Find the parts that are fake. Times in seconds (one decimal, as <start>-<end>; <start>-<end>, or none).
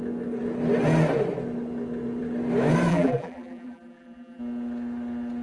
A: 2.9-4.4